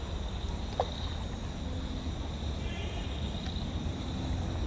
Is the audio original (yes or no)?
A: yes